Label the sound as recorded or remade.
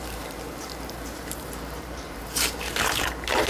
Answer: remade